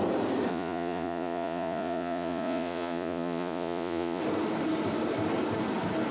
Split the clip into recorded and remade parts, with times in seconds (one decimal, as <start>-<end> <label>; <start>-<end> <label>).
0.0-0.5 recorded; 0.5-4.2 remade; 4.2-6.1 recorded